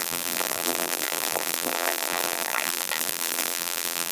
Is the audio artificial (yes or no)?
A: yes